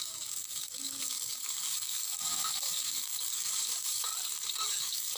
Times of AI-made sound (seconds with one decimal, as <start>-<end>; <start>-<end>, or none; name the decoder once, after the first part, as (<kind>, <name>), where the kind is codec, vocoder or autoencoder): 0.0-4.1 (codec, DAC); 4.7-5.2